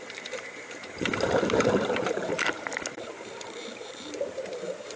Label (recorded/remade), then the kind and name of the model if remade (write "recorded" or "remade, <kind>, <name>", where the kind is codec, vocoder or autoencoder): remade, vocoder, BigVGAN v2